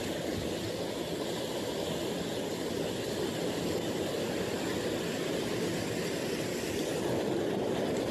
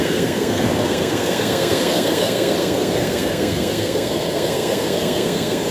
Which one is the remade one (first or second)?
second